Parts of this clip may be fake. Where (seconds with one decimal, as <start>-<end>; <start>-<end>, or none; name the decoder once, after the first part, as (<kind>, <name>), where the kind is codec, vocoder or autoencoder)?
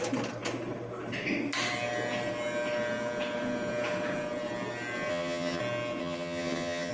5.1-5.6 (vocoder, HiFi-GAN); 6.0-6.9